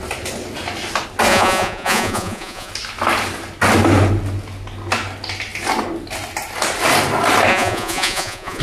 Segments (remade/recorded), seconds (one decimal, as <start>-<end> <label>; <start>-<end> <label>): 0.0-1.3 recorded; 1.3-2.7 remade; 2.7-7.5 recorded; 7.5-8.6 remade